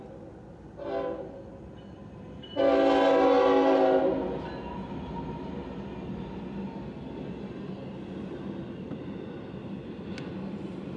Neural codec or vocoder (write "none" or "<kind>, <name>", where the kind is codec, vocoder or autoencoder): none